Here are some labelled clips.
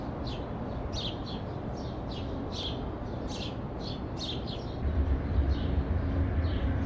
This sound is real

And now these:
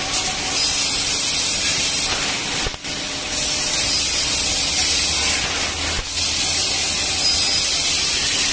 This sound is real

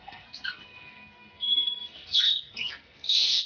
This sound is fake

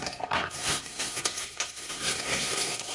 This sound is fake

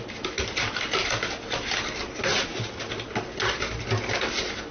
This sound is real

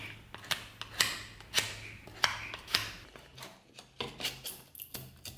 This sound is real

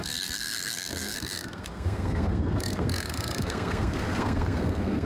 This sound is fake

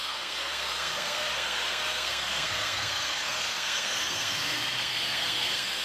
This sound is fake